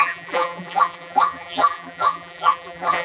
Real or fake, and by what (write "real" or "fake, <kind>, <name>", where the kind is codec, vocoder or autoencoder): fake, vocoder, BigVGAN v2